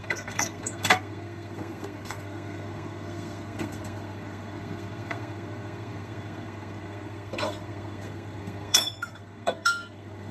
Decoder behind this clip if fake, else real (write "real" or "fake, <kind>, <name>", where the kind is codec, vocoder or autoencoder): fake, codec, SNAC